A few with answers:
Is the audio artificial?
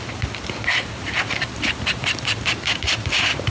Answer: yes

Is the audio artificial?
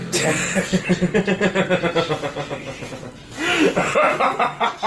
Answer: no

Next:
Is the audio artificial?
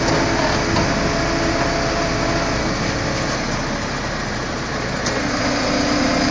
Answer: no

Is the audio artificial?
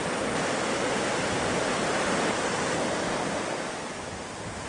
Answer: no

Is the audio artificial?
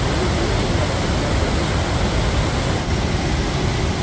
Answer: no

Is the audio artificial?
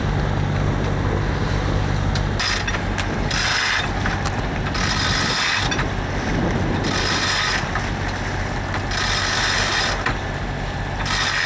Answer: no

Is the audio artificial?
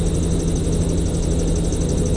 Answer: no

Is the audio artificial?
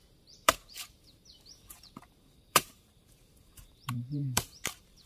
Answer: yes